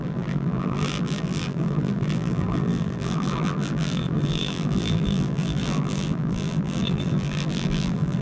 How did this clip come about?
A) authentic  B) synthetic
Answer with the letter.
B